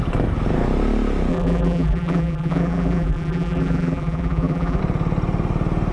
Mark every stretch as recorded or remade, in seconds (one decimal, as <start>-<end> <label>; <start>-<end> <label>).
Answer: 0.0-1.3 recorded; 1.3-4.8 remade; 4.8-5.9 recorded